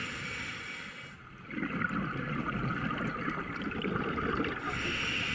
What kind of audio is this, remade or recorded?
recorded